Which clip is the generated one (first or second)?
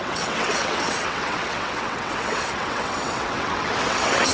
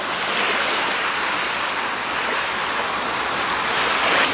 first